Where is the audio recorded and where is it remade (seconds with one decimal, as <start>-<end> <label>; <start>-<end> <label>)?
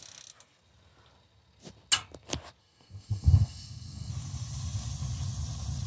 0.0-2.6 recorded; 2.6-4.1 remade; 4.1-5.9 recorded